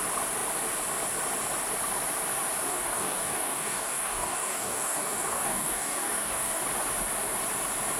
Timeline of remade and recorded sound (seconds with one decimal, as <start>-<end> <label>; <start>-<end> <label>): 0.0-2.7 recorded; 2.7-6.6 remade; 6.6-8.0 recorded